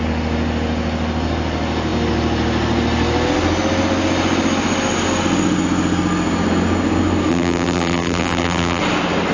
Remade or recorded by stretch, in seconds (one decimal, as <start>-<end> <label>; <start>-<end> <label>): 0.0-7.3 recorded; 7.3-8.8 remade; 8.8-9.3 recorded